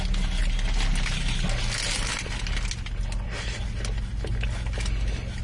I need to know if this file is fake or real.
real